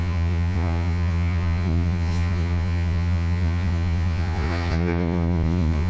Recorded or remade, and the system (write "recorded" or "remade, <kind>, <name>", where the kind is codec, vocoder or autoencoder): remade, vocoder, Vocos